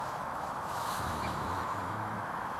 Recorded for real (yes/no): no